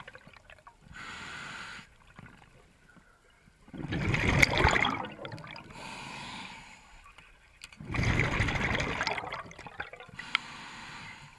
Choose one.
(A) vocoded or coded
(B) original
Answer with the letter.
B